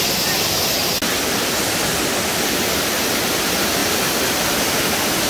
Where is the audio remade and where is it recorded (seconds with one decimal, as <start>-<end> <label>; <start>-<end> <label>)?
0.0-5.3 recorded